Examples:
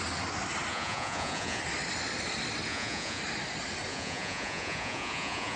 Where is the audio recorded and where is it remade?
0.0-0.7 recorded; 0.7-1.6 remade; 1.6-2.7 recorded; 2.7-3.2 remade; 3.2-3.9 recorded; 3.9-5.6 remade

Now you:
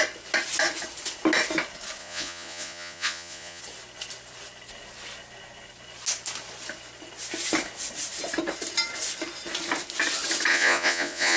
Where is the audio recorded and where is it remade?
0.0-2.0 recorded; 2.0-3.6 remade; 3.6-10.5 recorded; 10.5-11.4 remade

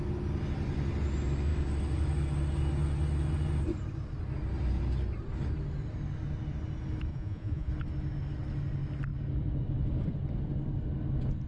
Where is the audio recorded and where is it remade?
0.0-7.1 recorded; 7.1-7.7 remade; 7.7-11.5 recorded